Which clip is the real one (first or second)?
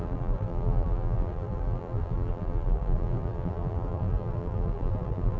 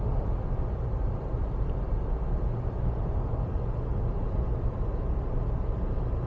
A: second